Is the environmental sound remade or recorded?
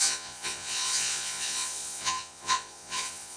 remade